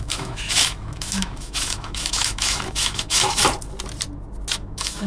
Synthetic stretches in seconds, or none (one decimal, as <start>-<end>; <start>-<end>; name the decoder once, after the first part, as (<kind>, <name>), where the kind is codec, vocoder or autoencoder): 0.0-3.4 (autoencoder, DAC-VAE); 4.5-5.1